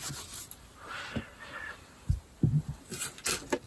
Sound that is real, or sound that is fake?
real